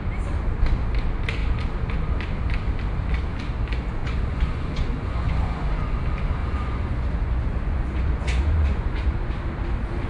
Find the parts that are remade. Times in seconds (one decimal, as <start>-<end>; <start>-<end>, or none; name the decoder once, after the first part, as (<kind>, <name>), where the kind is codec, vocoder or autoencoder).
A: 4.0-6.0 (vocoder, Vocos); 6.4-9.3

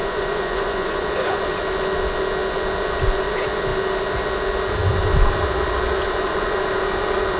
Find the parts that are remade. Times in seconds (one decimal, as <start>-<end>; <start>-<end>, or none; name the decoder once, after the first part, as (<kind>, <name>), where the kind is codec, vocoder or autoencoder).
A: 0.0-1.4 (vocoder, Vocos)

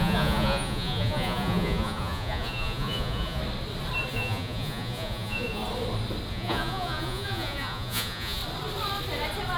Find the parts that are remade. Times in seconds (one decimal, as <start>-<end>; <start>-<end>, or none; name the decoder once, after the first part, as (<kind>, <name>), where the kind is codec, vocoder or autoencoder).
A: 0.0-3.4 (vocoder, Vocos); 4.1-5.6; 6.3-8.4

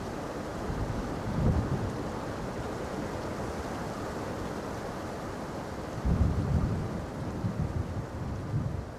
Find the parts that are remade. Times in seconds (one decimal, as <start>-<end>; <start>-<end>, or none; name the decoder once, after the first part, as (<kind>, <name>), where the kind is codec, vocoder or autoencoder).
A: none

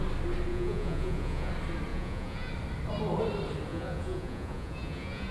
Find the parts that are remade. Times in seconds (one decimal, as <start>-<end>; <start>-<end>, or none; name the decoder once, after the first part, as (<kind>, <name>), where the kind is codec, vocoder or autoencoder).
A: 0.5-1.5 (vocoder, Vocos); 1.9-2.5; 3.7-5.3

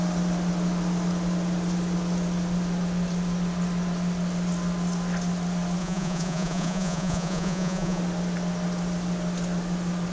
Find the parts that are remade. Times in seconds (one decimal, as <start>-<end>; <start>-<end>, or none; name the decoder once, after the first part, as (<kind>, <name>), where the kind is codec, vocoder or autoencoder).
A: 5.8-8.0 (vocoder, Vocos)

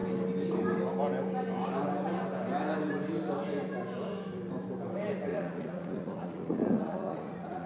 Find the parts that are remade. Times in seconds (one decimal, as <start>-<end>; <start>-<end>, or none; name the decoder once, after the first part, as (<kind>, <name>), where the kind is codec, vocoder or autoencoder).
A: 5.3-7.7 (vocoder, Vocos)

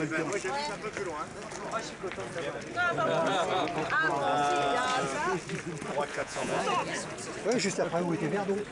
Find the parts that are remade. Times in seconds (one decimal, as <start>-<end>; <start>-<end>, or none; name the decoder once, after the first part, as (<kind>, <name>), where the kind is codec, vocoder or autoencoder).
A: 6.1-6.6 (vocoder, Vocos)